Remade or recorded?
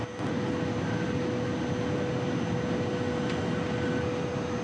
recorded